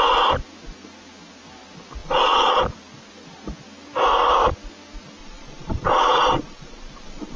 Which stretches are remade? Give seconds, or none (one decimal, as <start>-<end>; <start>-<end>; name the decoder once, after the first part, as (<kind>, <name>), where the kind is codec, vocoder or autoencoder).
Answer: 2.0-2.6 (vocoder, Vocos); 5.2-7.4